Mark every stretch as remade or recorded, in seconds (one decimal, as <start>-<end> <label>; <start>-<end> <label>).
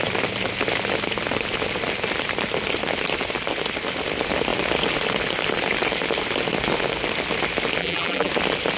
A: 0.0-7.8 recorded; 7.8-8.3 remade; 8.3-8.8 recorded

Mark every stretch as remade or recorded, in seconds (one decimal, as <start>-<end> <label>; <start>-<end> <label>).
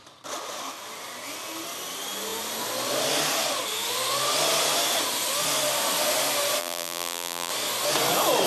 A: 0.0-6.6 recorded; 6.6-7.5 remade; 7.5-8.5 recorded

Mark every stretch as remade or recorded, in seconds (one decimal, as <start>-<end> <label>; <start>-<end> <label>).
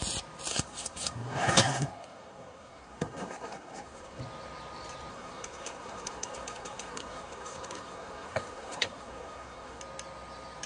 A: 0.0-0.5 recorded; 0.5-4.2 remade; 4.2-5.1 recorded; 5.1-9.8 remade; 9.8-10.7 recorded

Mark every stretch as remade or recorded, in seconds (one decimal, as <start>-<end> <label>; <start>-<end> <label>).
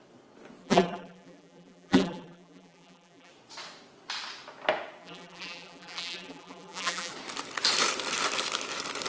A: 0.0-0.6 recorded; 0.6-3.3 remade; 3.3-5.0 recorded; 5.0-7.1 remade; 7.1-9.1 recorded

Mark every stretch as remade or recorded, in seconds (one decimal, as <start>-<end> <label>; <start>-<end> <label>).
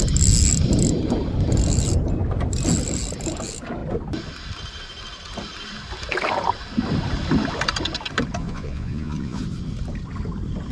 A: 0.0-8.4 recorded; 8.4-9.4 remade; 9.4-10.7 recorded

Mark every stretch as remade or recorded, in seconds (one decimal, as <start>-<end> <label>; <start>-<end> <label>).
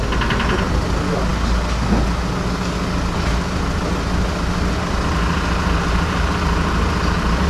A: 0.0-7.5 recorded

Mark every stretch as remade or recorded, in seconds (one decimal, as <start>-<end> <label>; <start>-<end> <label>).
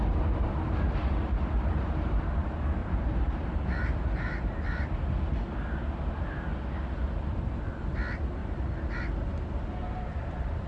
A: 0.0-2.8 recorded; 2.8-4.6 remade; 4.6-8.4 recorded; 8.4-9.0 remade; 9.0-10.7 recorded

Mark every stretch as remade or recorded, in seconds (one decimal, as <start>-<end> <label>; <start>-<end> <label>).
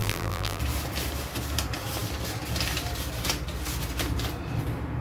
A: 0.0-0.6 remade; 0.6-5.0 recorded